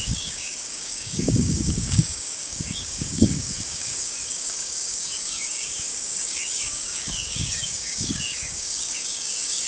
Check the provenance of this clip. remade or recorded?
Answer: remade